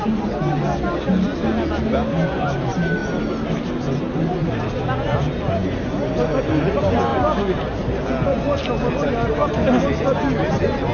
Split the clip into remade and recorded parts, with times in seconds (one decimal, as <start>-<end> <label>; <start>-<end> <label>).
0.0-10.9 recorded